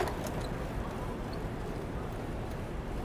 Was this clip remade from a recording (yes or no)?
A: no